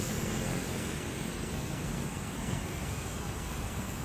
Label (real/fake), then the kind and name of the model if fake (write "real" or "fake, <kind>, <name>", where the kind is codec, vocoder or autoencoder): fake, codec, SNAC